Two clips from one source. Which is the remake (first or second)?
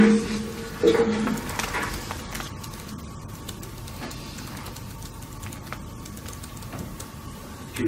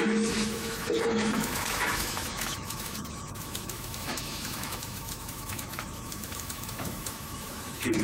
second